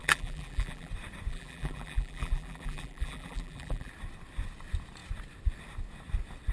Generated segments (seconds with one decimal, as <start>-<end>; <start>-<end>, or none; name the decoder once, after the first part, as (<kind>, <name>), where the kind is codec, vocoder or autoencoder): 0.0-0.9 (vocoder, BigVGAN v2); 1.3-3.9